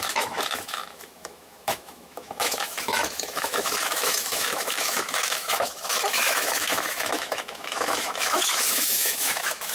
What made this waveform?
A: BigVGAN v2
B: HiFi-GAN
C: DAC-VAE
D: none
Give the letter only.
C